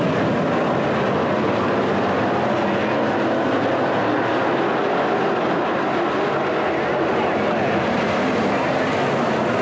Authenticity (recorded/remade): recorded